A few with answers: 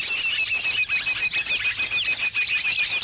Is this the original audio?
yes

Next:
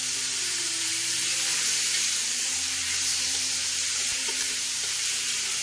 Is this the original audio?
no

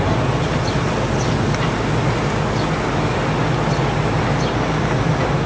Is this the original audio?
yes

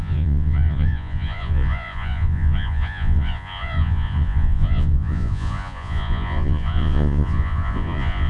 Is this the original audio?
no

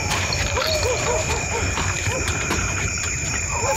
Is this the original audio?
no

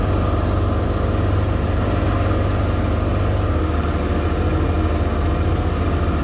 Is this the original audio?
yes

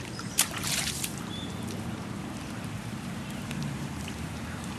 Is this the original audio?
no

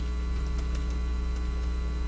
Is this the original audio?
yes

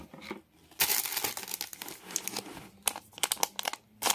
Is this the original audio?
yes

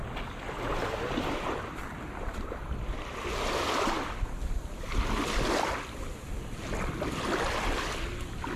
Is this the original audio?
yes